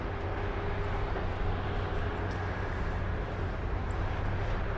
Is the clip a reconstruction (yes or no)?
no